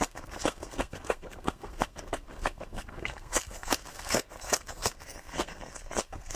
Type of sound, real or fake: fake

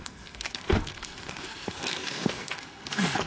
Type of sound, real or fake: fake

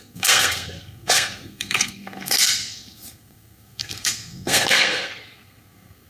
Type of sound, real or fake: fake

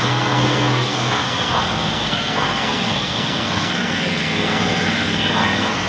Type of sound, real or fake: fake